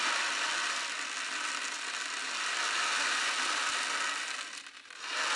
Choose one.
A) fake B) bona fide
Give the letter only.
B